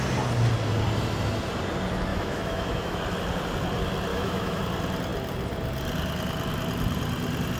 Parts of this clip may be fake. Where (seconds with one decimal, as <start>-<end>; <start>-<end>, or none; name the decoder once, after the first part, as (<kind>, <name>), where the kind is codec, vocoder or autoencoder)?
2.1-3.0 (autoencoder, DAC-VAE); 4.1-4.6